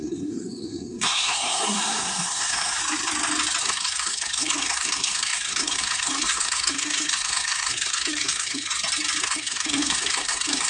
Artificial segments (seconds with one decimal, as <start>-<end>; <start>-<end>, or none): 0.0-2.8; 3.6-8.7; 9.2-10.7